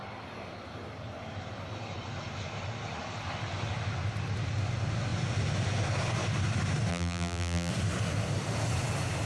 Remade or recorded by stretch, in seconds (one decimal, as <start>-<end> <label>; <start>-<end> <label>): 0.0-6.9 recorded; 6.9-7.7 remade; 7.7-9.3 recorded